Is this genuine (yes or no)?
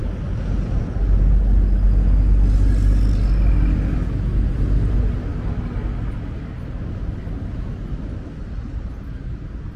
yes